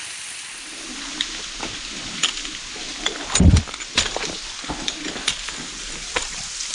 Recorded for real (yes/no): yes